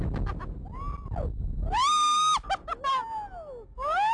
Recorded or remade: recorded